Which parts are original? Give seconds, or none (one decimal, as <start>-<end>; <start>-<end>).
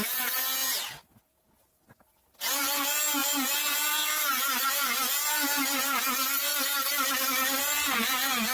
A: 6.5-7.6